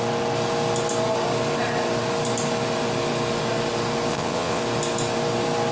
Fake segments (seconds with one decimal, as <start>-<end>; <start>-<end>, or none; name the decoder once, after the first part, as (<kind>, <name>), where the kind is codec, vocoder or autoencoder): 4.1-4.6 (vocoder, WaveNeXt)